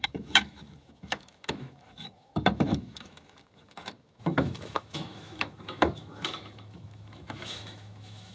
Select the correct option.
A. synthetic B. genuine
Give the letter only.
A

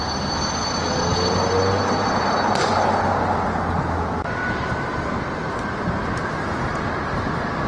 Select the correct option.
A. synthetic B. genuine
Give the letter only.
B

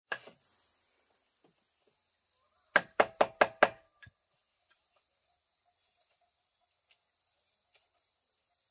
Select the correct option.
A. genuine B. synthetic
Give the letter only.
A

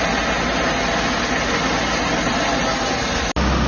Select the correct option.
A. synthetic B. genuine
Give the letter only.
B